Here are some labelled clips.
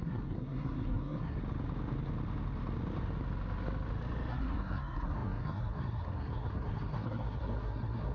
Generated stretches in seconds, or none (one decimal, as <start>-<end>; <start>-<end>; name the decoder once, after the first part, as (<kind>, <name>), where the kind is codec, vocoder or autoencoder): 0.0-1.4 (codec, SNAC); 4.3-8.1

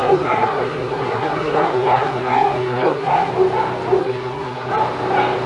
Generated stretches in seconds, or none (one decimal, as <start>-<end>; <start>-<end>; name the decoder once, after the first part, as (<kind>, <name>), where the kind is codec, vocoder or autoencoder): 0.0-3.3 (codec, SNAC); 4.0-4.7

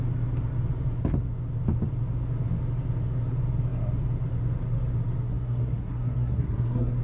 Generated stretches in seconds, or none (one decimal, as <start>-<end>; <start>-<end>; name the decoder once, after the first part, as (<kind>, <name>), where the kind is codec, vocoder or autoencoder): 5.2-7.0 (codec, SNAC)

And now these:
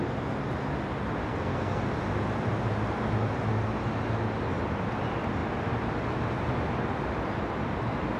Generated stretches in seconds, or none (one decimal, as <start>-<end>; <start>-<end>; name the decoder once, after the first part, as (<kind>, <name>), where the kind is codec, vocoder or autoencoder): 1.3-1.8 (codec, SNAC)

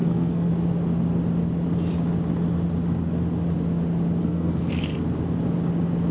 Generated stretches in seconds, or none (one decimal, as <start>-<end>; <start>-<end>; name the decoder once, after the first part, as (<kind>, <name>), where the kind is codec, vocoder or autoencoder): 0.0-0.5 (codec, SNAC); 4.2-4.9

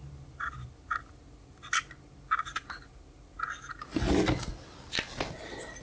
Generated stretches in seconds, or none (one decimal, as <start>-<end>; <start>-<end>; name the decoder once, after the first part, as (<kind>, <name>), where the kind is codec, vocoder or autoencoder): none